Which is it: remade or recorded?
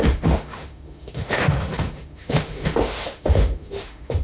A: remade